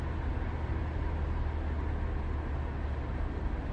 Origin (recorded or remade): recorded